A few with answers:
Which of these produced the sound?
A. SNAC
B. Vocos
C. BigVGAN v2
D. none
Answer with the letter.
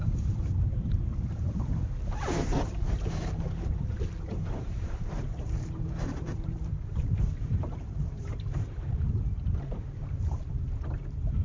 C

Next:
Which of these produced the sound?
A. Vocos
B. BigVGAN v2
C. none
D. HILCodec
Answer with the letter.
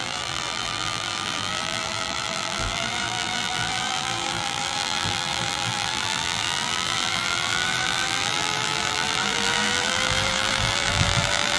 B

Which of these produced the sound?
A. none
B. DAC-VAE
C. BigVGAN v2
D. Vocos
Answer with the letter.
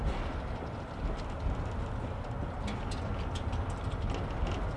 A